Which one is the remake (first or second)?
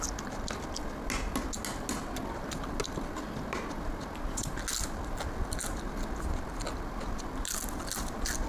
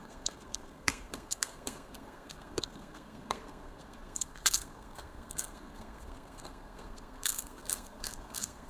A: second